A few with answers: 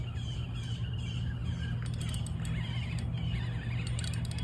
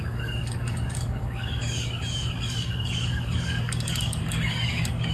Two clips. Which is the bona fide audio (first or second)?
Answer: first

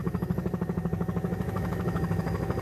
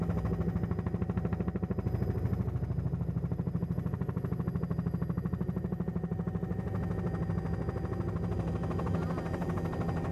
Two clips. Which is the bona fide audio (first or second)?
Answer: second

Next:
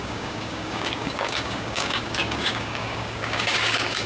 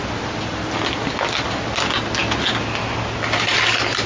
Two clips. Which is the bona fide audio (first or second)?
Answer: second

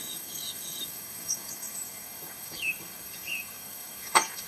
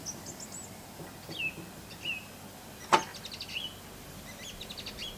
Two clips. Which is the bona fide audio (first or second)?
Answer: second